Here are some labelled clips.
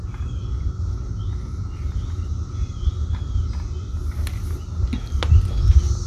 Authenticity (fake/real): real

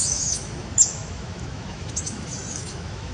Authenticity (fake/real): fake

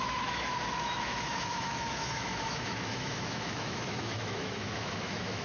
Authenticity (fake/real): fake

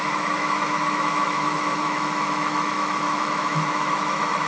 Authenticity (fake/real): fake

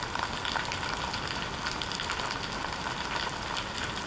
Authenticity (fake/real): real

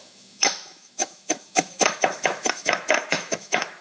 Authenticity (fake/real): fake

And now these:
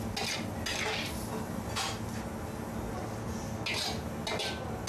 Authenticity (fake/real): real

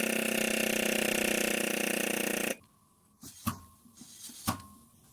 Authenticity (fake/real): real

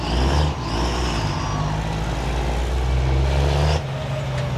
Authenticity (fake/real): real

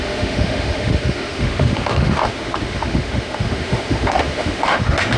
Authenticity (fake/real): fake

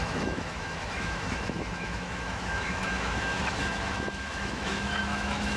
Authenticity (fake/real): fake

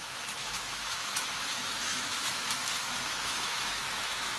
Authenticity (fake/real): fake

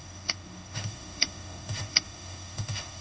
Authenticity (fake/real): fake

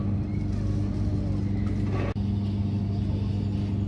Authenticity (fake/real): real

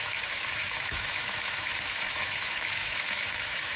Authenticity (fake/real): fake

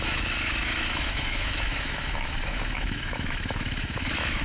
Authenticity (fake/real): fake